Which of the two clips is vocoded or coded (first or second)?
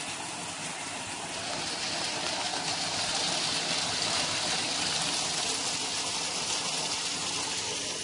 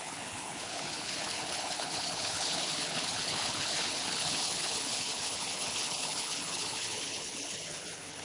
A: second